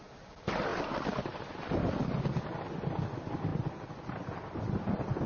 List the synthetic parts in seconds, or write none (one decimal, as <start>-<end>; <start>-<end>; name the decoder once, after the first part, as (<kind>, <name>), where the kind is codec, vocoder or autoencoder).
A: 0.7-1.9 (vocoder, BigVGAN v2); 3.5-4.6